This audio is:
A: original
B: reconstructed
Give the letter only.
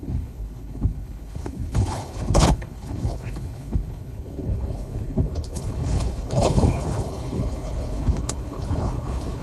B